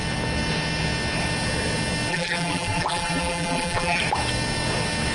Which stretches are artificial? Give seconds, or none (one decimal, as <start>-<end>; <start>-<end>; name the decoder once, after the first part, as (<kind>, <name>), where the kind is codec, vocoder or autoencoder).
2.1-4.0 (vocoder, BigVGAN v2)